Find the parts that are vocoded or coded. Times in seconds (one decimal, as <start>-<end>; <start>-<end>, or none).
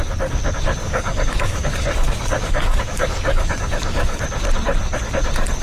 0.8-4.2